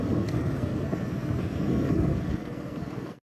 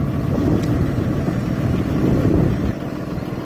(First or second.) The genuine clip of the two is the second